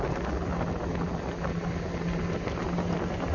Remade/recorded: recorded